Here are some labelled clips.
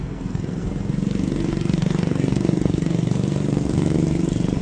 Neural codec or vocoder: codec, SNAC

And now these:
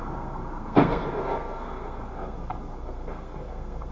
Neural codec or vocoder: codec, SNAC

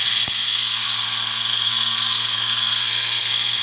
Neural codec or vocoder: codec, SNAC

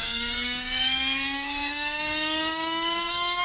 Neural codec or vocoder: codec, SNAC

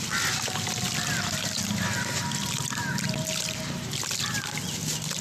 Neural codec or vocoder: none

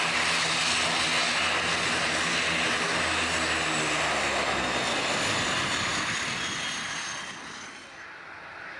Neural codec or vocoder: none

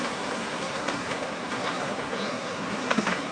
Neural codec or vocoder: codec, SNAC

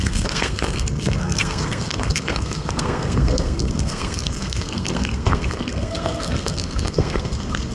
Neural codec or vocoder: codec, SNAC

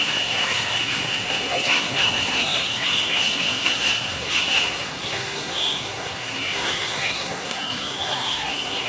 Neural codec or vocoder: codec, SNAC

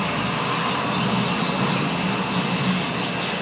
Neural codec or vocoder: none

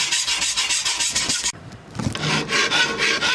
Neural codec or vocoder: none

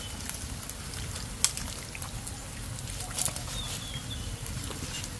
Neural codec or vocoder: none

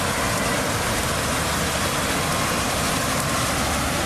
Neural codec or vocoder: none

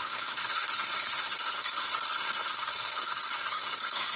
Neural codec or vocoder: codec, SNAC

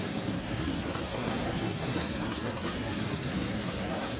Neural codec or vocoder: codec, SNAC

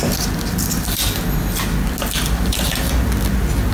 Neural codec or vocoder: none